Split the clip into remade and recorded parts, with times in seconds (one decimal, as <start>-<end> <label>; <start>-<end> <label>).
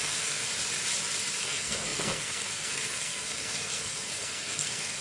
0.0-0.5 remade; 0.5-1.4 recorded; 1.4-5.0 remade